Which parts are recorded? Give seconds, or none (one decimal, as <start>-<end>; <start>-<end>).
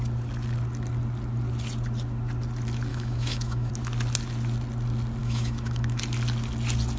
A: 0.0-2.9; 3.7-5.2; 6.0-7.0